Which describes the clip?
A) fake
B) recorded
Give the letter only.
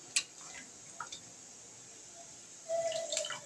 B